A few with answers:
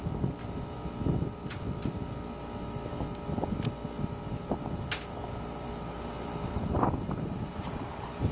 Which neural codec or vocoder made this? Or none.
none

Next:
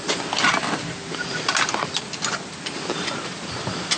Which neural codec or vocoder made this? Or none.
none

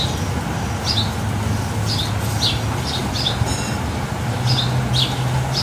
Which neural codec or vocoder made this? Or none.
none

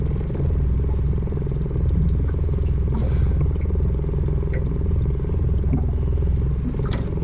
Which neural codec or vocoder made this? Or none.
none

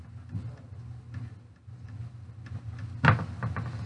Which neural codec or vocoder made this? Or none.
none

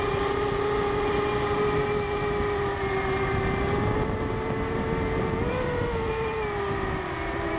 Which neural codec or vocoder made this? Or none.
none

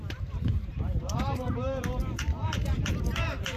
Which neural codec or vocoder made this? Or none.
vocoder, BigVGAN v2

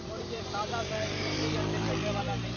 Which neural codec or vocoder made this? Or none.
vocoder, BigVGAN v2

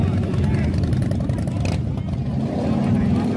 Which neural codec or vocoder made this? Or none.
none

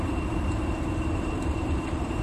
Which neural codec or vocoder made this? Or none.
vocoder, BigVGAN v2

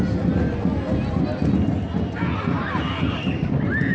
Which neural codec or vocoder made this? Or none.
none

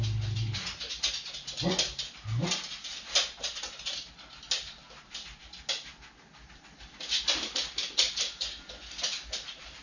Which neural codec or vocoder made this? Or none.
none